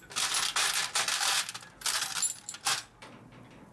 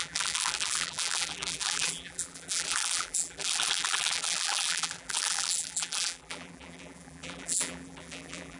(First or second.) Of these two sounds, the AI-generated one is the second